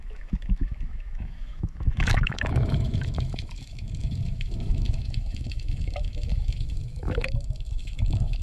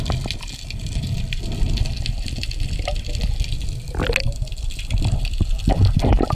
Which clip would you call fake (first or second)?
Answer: first